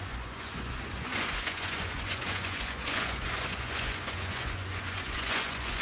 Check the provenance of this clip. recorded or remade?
remade